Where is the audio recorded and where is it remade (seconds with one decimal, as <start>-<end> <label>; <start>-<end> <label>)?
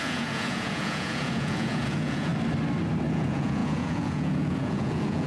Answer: 0.0-2.3 remade; 2.3-3.1 recorded; 3.1-5.3 remade